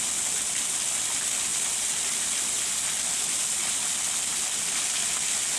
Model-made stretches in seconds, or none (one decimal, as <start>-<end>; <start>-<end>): none